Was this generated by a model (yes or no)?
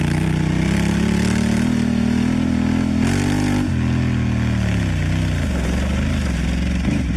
no